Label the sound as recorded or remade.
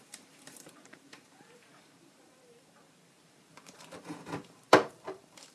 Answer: remade